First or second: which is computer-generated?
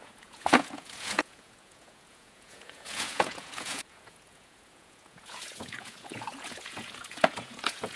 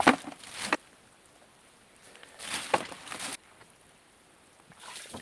first